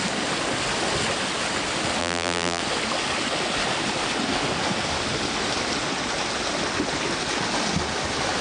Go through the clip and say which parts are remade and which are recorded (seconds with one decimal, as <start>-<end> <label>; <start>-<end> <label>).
0.0-2.0 recorded; 2.0-2.6 remade; 2.6-8.4 recorded